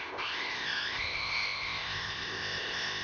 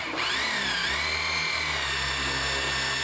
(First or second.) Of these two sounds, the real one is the second